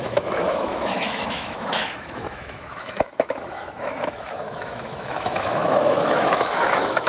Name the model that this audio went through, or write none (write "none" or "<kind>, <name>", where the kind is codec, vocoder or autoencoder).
autoencoder, DAC-VAE